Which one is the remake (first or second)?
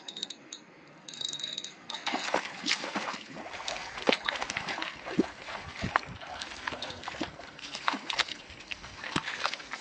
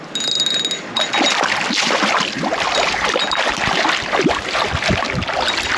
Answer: first